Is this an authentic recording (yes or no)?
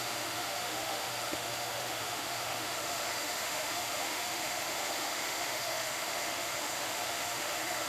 no